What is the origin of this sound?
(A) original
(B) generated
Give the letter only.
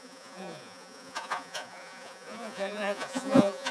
B